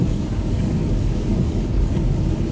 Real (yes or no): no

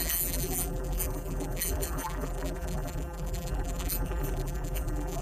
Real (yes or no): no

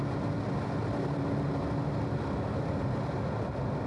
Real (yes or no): yes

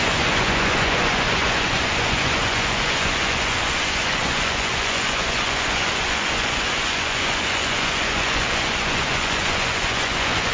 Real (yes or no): no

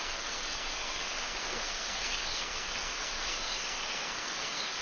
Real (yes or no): no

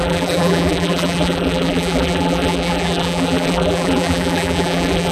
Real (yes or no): no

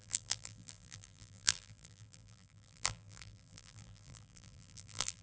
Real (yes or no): no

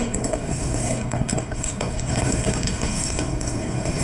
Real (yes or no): no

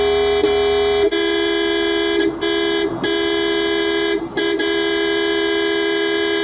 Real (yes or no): yes